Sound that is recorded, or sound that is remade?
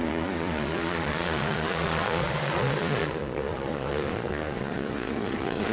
remade